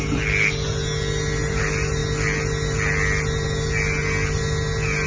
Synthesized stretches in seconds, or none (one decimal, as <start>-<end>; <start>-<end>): none

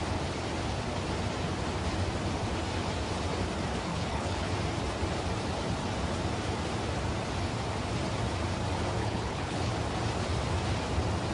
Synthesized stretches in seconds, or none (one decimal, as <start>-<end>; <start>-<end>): 3.9-4.5; 9.0-9.7

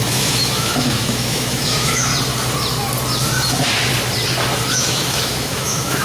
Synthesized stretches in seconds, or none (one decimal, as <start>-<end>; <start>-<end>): 0.0-2.1; 4.7-6.0

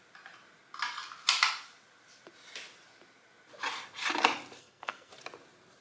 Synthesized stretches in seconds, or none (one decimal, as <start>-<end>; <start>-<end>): 4.6-5.1